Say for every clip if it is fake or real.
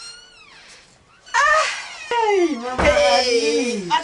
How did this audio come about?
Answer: real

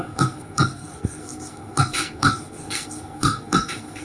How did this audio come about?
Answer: fake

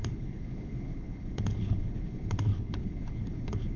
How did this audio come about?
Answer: fake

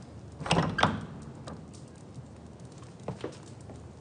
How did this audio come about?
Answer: real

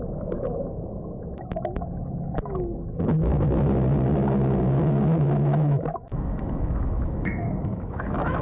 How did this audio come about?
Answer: fake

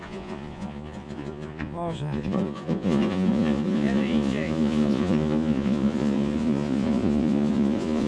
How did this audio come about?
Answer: fake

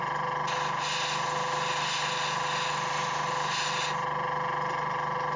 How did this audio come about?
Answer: real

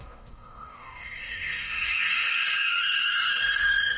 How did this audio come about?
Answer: fake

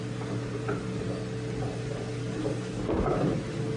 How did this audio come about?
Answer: real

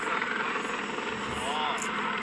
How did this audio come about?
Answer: real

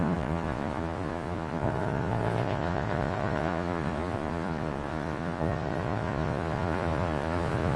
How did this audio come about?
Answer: fake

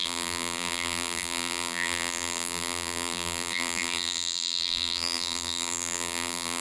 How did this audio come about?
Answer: fake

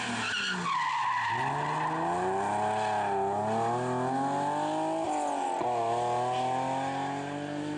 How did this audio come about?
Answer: real